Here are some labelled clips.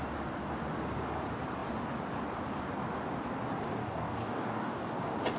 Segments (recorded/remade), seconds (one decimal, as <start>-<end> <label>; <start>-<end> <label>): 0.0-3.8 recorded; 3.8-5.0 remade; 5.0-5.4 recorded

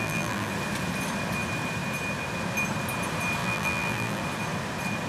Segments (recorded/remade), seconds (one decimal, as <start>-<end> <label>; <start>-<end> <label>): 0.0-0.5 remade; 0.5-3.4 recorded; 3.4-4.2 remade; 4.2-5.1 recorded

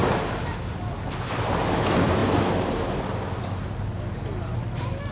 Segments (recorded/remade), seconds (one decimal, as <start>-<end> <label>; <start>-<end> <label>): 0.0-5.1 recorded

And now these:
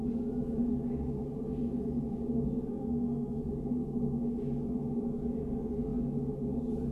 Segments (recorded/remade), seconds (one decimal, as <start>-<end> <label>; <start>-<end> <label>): 0.0-2.7 recorded; 2.7-3.4 remade; 3.4-6.9 recorded

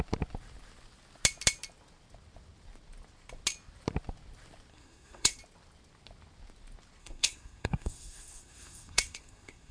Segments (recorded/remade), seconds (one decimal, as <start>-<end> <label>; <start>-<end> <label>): 0.0-4.7 recorded; 4.7-5.4 remade; 5.4-7.0 recorded; 7.0-9.7 remade

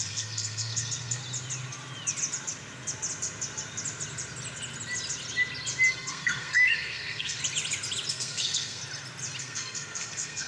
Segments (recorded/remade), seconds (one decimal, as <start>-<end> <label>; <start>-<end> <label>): 0.0-1.2 remade; 1.2-5.9 recorded; 5.9-7.4 remade; 7.4-8.1 recorded; 8.1-8.8 remade; 8.8-9.4 recorded; 9.4-10.5 remade

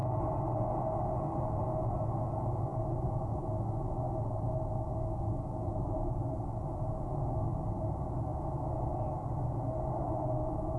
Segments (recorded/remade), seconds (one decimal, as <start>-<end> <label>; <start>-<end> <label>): 0.0-2.7 recorded; 2.7-3.3 remade; 3.3-5.7 recorded; 5.7-6.2 remade; 6.2-10.8 recorded

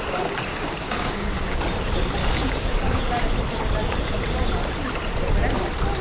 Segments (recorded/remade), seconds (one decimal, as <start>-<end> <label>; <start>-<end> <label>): 0.0-0.5 recorded; 0.5-1.6 remade; 1.6-2.2 recorded; 2.2-3.0 remade; 3.0-6.0 recorded